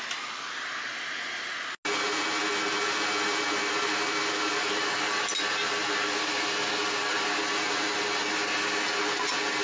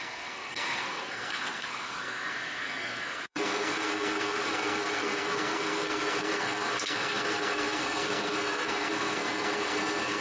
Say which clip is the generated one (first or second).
second